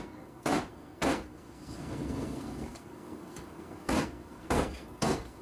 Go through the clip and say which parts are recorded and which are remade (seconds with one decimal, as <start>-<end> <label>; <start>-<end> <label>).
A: 0.0-5.4 remade